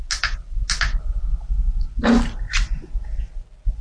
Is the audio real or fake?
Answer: real